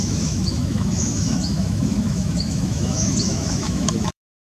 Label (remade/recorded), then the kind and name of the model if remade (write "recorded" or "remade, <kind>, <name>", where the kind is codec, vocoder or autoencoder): remade, autoencoder, DAC-VAE